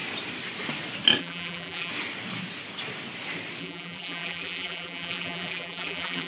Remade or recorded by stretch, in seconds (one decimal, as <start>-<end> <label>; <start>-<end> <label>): 0.0-1.2 recorded; 1.2-1.9 remade; 1.9-3.6 recorded; 3.6-6.3 remade

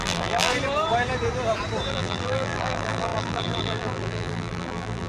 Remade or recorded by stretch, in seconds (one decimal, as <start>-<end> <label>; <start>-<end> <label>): 0.0-0.5 remade; 0.5-1.9 recorded; 1.9-5.1 remade

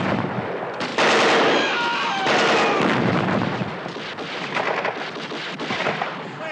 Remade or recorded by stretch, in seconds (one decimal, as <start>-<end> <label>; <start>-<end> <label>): 0.0-6.5 recorded

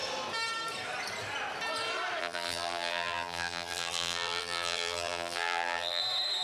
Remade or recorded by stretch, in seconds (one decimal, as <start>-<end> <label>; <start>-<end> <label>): 0.0-2.2 recorded; 2.2-6.0 remade; 6.0-6.4 recorded